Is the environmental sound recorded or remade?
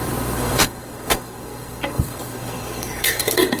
remade